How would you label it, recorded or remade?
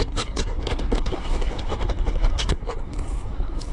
remade